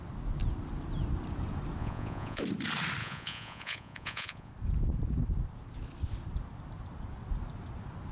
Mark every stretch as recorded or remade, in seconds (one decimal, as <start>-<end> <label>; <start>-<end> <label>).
0.0-1.8 recorded; 1.8-2.4 remade; 2.4-3.0 recorded; 3.0-4.5 remade; 4.5-8.1 recorded